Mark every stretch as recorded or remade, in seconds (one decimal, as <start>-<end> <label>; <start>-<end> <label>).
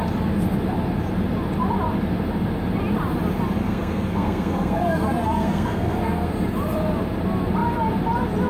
0.0-3.6 recorded; 3.6-6.3 remade; 6.3-8.5 recorded